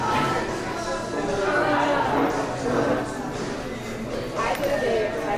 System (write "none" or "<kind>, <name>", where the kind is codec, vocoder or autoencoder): none